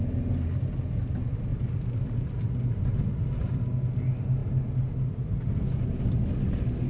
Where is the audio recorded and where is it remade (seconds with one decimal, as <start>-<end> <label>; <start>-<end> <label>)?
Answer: 0.0-1.5 recorded; 1.5-2.5 remade; 2.5-3.2 recorded; 3.2-3.7 remade; 3.7-6.9 recorded